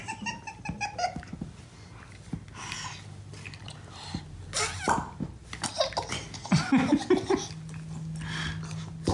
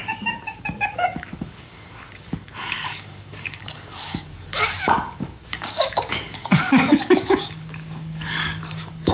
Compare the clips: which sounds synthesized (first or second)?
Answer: second